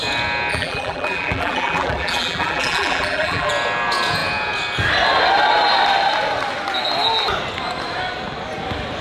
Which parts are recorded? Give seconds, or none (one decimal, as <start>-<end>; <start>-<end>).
0.0-0.5; 3.5-9.0